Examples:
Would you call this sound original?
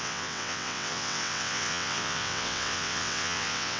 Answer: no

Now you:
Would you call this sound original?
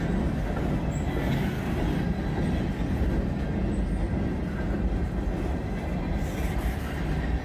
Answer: yes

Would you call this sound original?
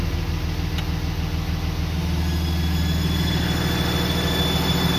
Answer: yes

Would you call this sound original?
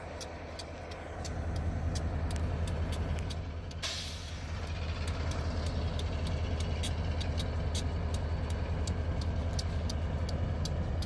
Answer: yes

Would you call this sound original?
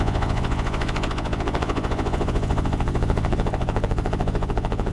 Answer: no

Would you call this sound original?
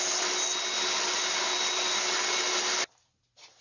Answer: yes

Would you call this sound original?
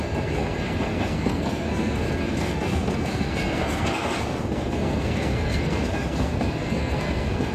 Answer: no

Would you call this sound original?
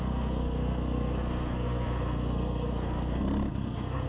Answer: no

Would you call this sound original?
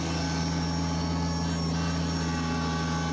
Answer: yes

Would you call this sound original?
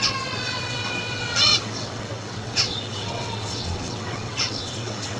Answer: no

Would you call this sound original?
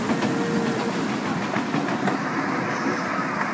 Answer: yes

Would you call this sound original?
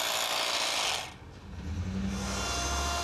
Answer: yes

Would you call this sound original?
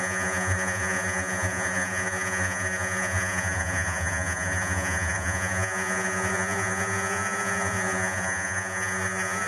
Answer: no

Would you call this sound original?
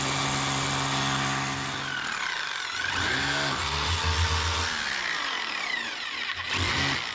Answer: yes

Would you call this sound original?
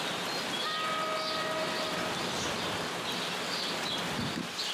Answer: yes